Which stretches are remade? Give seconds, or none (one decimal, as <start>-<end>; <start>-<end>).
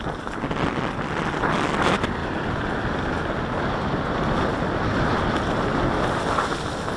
none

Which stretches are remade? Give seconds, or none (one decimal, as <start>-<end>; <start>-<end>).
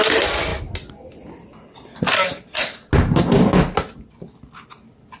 none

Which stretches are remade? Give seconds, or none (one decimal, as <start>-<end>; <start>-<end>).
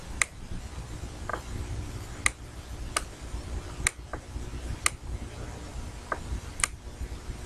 none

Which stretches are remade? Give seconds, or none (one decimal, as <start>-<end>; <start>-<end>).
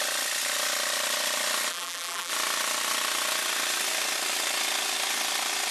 1.7-2.3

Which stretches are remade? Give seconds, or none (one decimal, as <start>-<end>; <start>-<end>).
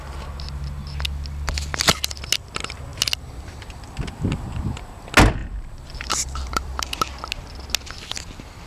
5.4-7.1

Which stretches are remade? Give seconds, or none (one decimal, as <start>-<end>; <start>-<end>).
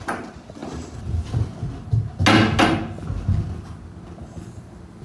0.6-1.2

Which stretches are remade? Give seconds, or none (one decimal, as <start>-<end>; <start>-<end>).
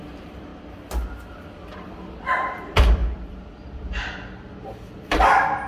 0.0-0.5; 1.3-5.7